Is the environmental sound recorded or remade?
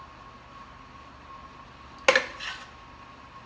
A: recorded